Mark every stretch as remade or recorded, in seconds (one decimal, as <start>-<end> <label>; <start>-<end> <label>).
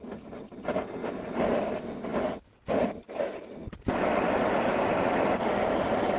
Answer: 0.0-6.2 recorded